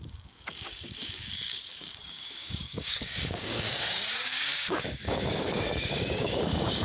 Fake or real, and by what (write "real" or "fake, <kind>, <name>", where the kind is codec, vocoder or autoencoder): fake, codec, DAC